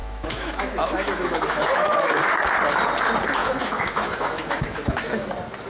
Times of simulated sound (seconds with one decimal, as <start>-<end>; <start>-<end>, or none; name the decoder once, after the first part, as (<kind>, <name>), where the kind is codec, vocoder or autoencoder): 0.0-2.1 (autoencoder, DAC-VAE); 3.4-5.3

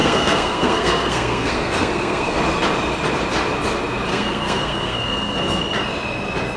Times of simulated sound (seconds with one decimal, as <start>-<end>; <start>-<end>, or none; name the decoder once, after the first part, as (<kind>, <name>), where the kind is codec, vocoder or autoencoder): 0.0-2.4 (codec, SNAC); 4.1-5.6

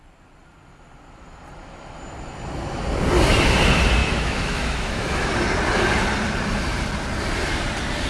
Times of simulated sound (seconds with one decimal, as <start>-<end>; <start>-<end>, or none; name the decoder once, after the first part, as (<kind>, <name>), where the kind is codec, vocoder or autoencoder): 4.0-5.3 (autoencoder, DAC-VAE)